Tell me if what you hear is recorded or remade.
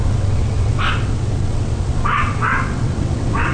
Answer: remade